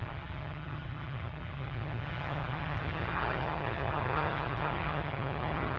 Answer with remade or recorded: remade